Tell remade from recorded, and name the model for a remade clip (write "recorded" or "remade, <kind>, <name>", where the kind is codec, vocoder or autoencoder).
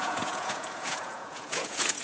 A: remade, vocoder, Vocos